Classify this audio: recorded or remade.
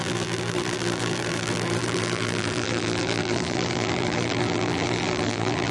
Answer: remade